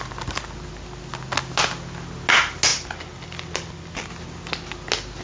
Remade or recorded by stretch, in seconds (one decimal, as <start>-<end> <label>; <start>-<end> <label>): 0.0-2.7 recorded; 2.7-4.1 remade; 4.1-5.2 recorded